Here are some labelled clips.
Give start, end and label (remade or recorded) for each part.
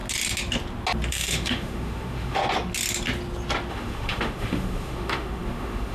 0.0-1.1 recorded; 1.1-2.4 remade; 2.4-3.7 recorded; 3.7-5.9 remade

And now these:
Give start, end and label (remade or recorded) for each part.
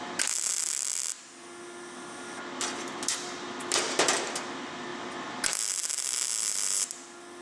0.0-7.4 recorded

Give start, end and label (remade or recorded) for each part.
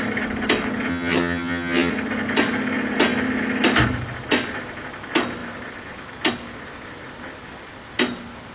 0.0-0.9 recorded; 0.9-1.9 remade; 1.9-8.5 recorded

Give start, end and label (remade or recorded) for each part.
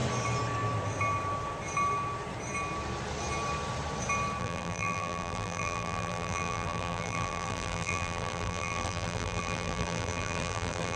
0.0-4.4 recorded; 4.4-11.0 remade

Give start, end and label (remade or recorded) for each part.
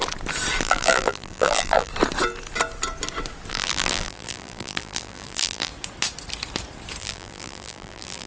0.0-0.6 recorded; 0.6-1.9 remade; 1.9-3.5 recorded; 3.5-5.7 remade; 5.7-7.0 recorded; 7.0-8.3 remade